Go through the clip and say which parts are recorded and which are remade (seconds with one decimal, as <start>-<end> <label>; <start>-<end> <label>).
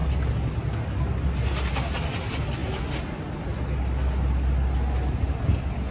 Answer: 0.0-5.9 recorded